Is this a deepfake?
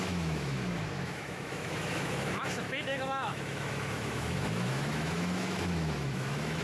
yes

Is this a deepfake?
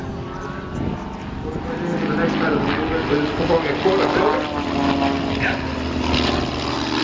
no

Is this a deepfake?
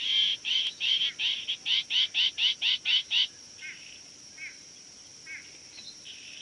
no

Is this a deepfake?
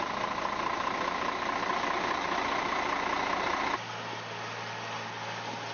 no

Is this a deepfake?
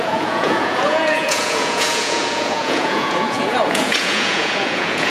yes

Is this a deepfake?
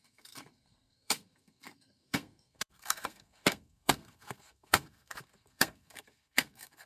yes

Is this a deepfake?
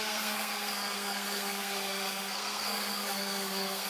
yes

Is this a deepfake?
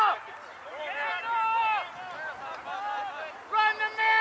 no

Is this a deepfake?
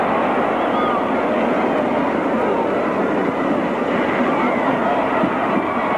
no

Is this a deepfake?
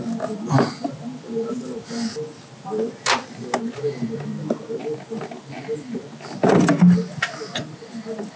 no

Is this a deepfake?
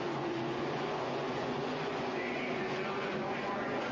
yes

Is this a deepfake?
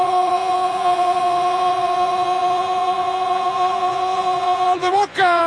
yes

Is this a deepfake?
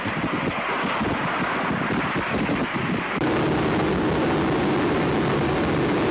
no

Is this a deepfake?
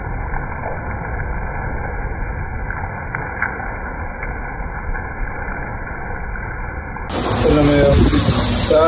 no